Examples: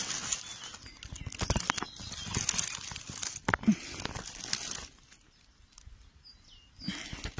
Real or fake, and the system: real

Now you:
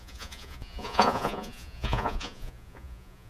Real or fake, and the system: fake, vocoder, Vocos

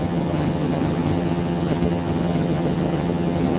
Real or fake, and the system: fake, vocoder, HiFi-GAN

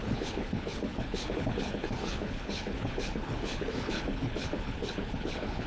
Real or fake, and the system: fake, codec, HILCodec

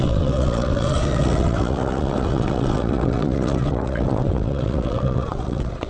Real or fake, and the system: fake, vocoder, WaveNeXt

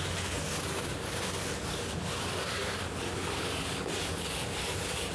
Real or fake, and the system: fake, codec, DAC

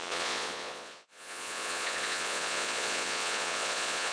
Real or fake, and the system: fake, vocoder, Vocos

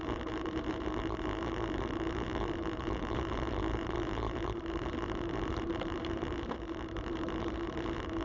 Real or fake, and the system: fake, vocoder, BigVGAN v2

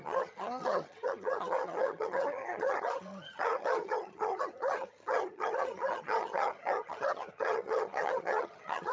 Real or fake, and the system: fake, vocoder, HiFi-GAN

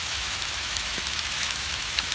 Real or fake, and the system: fake, autoencoder, DAC-VAE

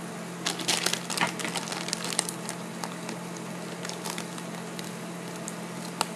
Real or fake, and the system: real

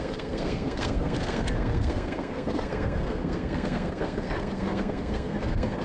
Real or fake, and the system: fake, codec, SNAC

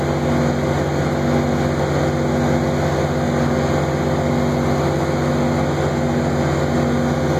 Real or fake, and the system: real